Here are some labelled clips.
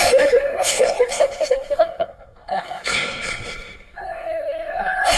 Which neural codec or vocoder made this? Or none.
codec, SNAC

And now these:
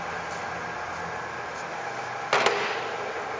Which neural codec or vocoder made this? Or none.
none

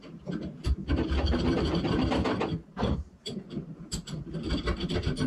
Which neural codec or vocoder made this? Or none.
vocoder, BigVGAN v2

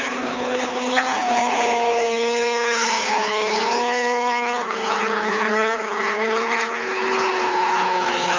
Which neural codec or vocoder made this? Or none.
codec, HILCodec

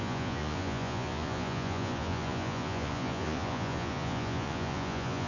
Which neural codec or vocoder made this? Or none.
vocoder, Vocos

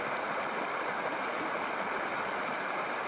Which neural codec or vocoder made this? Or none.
none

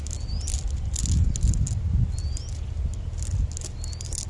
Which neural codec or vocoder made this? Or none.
none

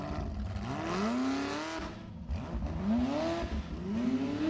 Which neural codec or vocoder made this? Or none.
none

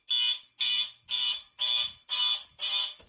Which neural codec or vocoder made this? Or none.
none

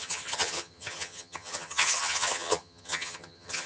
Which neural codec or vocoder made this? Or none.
vocoder, HiFi-GAN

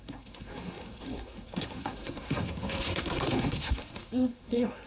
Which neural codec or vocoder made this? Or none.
codec, SNAC